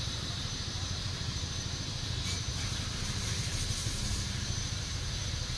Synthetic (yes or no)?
yes